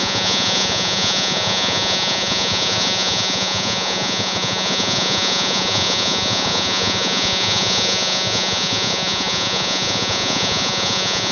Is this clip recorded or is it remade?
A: remade